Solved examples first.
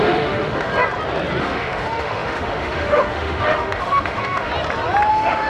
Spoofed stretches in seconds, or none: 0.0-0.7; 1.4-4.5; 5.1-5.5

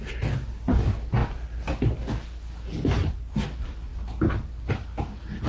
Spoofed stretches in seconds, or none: none

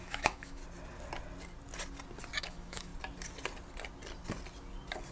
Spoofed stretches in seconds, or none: 0.0-0.6; 2.4-2.9